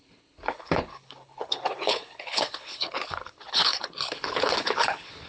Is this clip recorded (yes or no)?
no